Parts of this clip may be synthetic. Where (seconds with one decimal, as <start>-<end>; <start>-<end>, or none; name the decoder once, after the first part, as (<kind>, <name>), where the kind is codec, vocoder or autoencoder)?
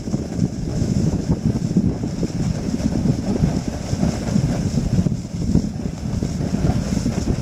0.7-1.2 (autoencoder, DAC-VAE)